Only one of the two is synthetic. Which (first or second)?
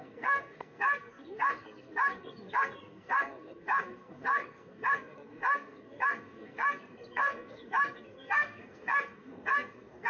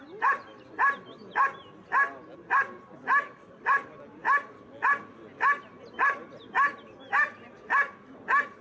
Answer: first